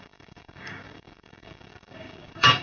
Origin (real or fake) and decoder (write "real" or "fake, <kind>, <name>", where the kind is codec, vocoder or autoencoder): fake, codec, DAC